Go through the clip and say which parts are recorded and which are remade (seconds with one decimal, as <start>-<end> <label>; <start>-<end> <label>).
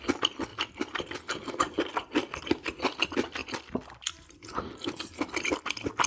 0.0-0.5 recorded; 0.5-1.5 remade; 1.5-3.4 recorded; 3.4-5.5 remade; 5.5-6.1 recorded